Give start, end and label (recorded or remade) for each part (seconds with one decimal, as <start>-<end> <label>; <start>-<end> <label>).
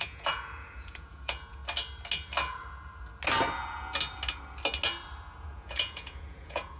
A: 0.0-1.6 remade; 1.6-5.4 recorded; 5.4-6.8 remade